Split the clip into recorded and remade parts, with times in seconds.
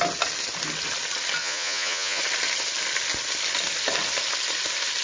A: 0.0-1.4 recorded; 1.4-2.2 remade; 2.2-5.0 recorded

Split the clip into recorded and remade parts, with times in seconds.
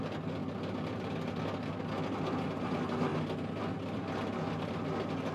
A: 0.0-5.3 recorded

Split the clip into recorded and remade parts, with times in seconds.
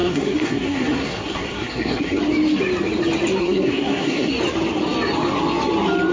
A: 0.0-2.2 remade; 2.2-3.4 recorded; 3.4-4.3 remade; 4.3-6.1 recorded